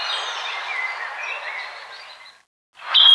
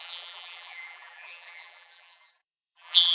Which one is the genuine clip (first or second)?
first